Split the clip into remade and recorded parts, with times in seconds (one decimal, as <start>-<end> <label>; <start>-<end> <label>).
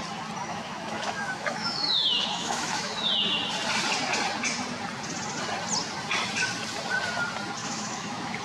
0.0-0.4 recorded; 0.4-3.1 remade; 3.1-7.6 recorded; 7.6-8.4 remade